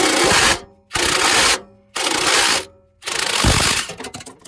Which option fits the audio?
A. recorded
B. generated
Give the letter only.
A